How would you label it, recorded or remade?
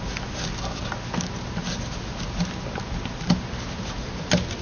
recorded